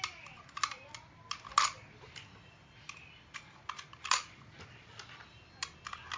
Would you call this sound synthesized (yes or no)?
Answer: no